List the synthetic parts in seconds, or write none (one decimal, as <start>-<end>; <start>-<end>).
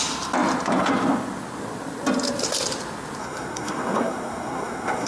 3.2-5.1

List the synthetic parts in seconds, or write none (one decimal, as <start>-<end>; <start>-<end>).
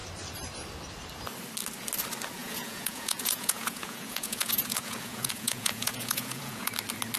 2.4-6.7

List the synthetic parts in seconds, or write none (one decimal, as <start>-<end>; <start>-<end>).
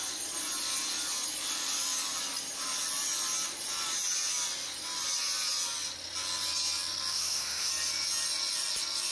7.1-7.7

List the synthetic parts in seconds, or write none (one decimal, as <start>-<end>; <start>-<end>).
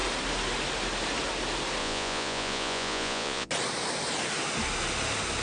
1.8-3.5